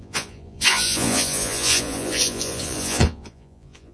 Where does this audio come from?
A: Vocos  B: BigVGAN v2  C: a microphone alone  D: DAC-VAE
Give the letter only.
A